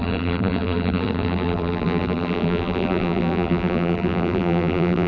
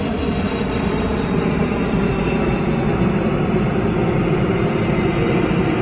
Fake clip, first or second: first